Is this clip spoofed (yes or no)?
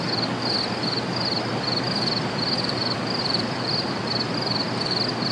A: yes